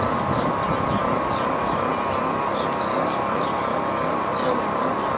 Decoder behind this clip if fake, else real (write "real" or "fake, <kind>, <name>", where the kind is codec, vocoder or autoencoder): real